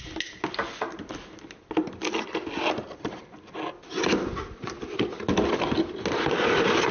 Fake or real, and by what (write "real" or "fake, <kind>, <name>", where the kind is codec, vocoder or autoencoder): real